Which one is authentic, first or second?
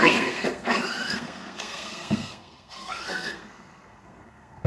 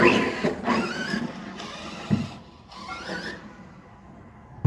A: second